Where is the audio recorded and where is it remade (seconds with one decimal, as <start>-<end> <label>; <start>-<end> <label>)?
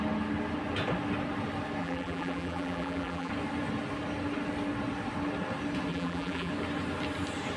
0.0-1.8 recorded; 1.8-3.3 remade; 3.3-5.9 recorded; 5.9-6.5 remade; 6.5-7.6 recorded